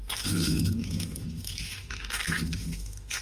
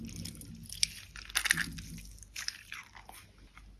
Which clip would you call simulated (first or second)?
first